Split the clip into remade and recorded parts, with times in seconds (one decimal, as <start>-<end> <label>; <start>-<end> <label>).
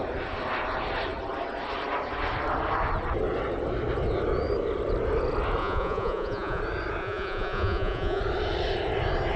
0.0-5.6 recorded; 5.6-6.6 remade; 6.6-7.0 recorded; 7.0-8.2 remade; 8.2-9.4 recorded